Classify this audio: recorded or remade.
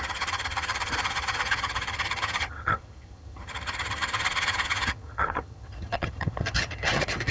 remade